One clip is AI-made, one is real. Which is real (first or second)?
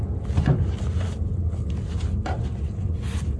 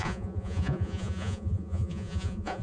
first